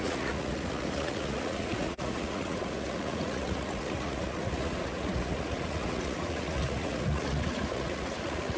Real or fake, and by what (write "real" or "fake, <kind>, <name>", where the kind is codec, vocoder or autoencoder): fake, vocoder, Vocos